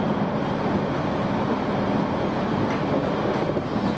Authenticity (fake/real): real